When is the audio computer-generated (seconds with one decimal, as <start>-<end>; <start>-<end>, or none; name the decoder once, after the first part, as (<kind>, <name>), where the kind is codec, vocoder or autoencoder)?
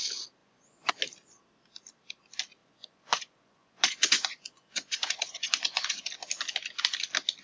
0.4-0.9 (vocoder, Vocos); 2.6-6.1